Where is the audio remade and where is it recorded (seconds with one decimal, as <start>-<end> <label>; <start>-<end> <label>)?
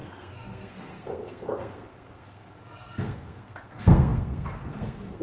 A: 0.0-5.2 remade